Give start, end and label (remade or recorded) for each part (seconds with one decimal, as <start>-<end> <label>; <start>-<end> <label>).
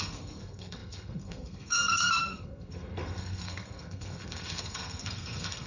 0.0-5.7 remade